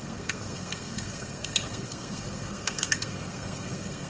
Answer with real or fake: fake